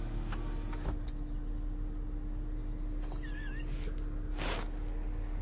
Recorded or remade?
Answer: recorded